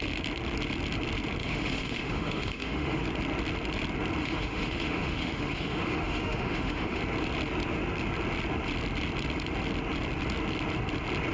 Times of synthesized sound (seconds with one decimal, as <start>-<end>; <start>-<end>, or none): 1.4-3.0; 4.2-7.0